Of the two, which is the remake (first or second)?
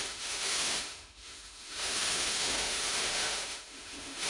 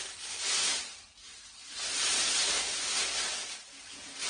first